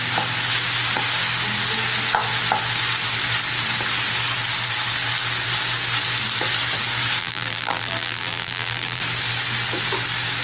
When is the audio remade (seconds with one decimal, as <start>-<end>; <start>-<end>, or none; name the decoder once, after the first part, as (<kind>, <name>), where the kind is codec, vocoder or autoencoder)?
7.2-9.0 (vocoder, BigVGAN v2)